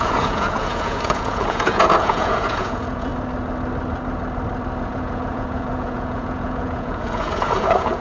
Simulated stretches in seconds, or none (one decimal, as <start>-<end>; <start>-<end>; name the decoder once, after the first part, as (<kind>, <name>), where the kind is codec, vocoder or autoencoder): 0.0-3.1 (vocoder, Vocos); 4.8-8.0